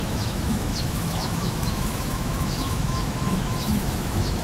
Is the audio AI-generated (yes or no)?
yes